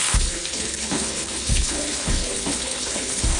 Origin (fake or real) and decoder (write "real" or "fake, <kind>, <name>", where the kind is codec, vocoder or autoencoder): fake, codec, HILCodec